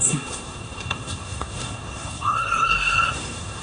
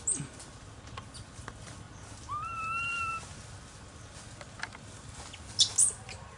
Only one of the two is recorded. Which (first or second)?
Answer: second